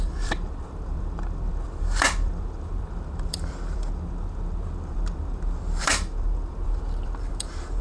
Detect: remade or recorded remade